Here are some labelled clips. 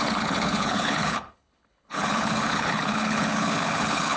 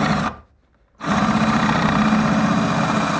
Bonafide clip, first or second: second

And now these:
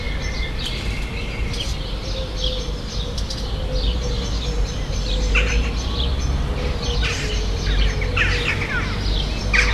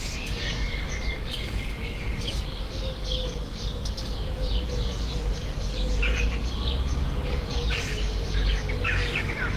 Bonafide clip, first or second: first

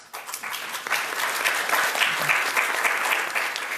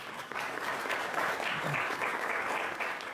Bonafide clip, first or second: first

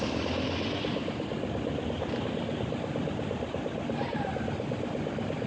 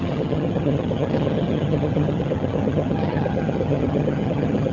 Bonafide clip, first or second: first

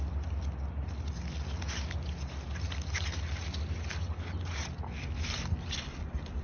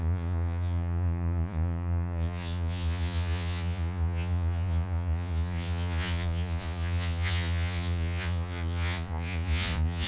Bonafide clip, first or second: first